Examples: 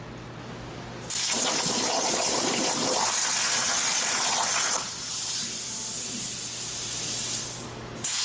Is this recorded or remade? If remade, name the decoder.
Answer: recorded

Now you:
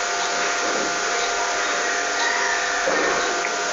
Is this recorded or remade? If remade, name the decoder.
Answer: recorded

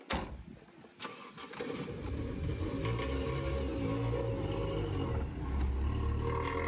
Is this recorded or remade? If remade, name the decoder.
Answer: recorded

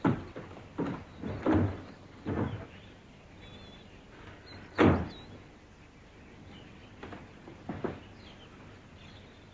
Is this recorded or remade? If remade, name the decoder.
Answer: recorded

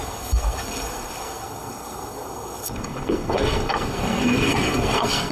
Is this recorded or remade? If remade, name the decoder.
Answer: remade, codec, SNAC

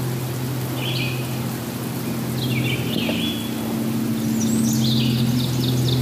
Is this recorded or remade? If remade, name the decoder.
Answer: recorded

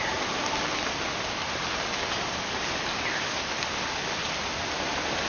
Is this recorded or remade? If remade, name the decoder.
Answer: recorded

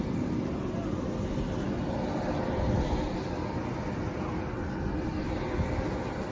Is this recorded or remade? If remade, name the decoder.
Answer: recorded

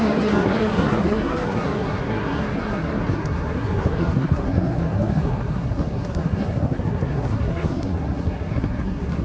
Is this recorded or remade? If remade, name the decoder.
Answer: remade, codec, SNAC